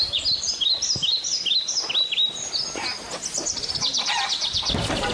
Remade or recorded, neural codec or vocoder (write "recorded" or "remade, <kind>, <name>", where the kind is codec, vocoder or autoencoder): recorded